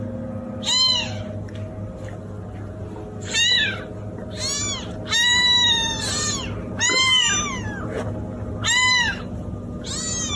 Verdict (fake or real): real